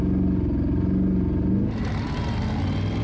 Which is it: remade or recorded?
recorded